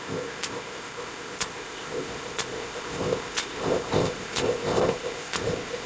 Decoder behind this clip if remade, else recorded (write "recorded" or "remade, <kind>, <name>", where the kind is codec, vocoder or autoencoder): remade, codec, ZipCodec